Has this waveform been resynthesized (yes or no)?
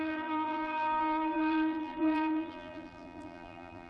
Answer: yes